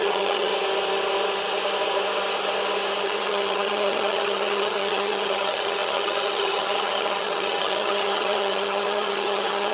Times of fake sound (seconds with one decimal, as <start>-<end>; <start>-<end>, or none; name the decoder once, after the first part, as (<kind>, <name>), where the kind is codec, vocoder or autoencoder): 0.0-0.5 (vocoder, HiFi-GAN); 3.0-9.7